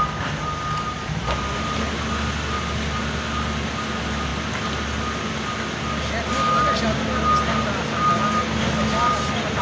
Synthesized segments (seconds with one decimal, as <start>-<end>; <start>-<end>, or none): none